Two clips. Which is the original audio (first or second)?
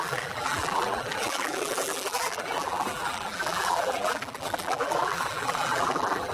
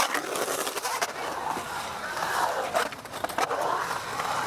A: second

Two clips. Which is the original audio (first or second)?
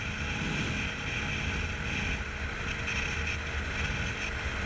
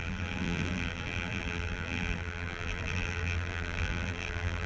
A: first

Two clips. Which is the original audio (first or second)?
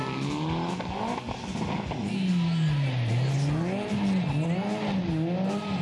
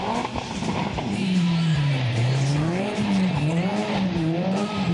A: first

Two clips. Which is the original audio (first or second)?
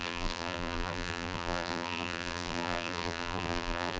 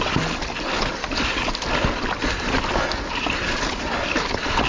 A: second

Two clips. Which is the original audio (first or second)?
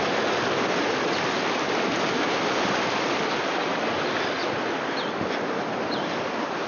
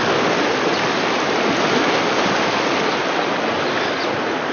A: second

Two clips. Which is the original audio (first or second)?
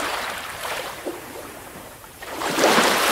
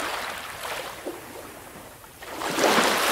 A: second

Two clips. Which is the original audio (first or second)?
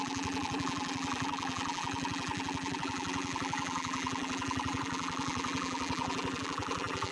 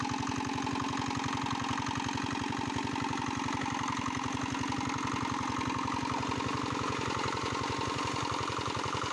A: second